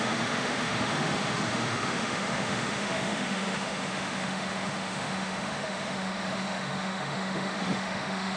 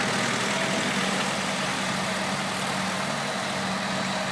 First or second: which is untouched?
second